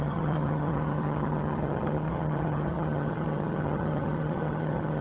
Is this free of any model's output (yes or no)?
no